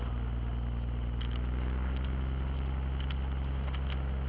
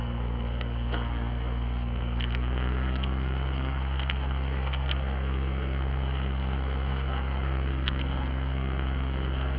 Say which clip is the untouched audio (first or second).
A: first